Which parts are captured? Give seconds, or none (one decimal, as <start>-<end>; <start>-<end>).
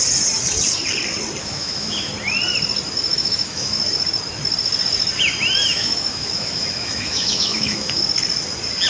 0.0-1.4; 2.1-3.1; 3.8-5.7; 8.0-8.9